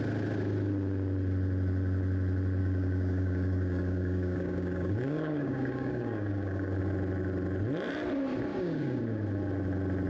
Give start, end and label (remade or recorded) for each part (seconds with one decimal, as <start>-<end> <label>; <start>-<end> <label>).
0.0-2.6 recorded; 2.6-6.8 remade; 6.8-8.5 recorded; 8.5-9.0 remade; 9.0-10.1 recorded